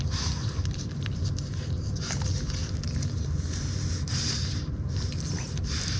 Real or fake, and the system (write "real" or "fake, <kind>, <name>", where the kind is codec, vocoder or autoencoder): real